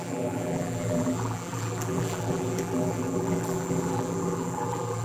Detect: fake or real fake